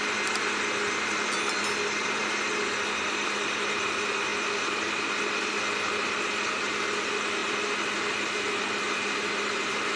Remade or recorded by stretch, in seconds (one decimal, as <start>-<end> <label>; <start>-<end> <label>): 0.0-10.0 recorded